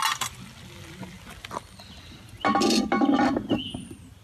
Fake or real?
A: real